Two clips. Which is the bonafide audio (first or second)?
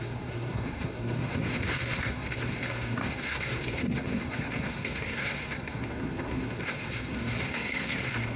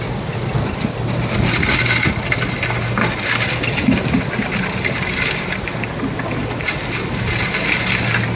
second